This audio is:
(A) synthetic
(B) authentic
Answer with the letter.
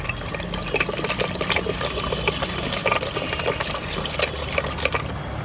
B